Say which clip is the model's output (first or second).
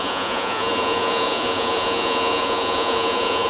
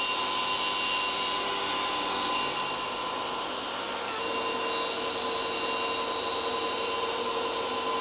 first